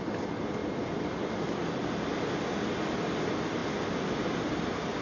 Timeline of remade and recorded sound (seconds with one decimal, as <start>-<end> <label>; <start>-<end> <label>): 0.0-5.0 recorded